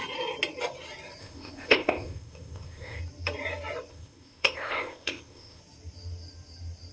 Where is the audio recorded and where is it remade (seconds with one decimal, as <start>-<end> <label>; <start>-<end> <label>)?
0.0-1.2 recorded; 1.2-3.0 remade; 3.0-3.9 recorded; 3.9-5.6 remade; 5.6-6.9 recorded